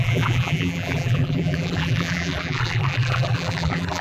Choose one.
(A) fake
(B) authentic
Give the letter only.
A